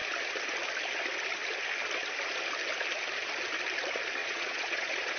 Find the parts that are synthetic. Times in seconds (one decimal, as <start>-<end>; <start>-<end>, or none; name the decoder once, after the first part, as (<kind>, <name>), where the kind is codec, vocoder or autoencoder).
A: 4.2-5.2 (vocoder, Vocos)